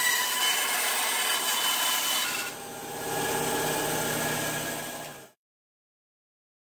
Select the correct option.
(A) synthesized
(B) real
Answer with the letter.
B